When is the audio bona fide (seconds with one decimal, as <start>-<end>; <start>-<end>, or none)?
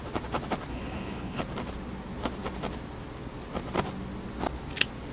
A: 0.0-0.7; 1.4-5.1